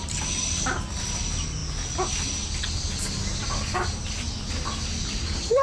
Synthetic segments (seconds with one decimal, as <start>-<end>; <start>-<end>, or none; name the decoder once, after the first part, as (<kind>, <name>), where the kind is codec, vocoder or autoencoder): none